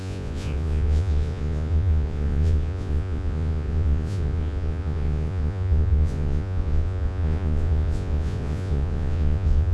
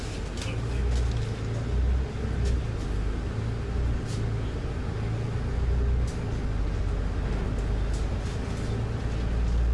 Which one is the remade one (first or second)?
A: first